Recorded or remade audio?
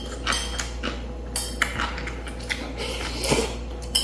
recorded